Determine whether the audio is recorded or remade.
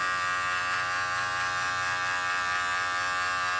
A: recorded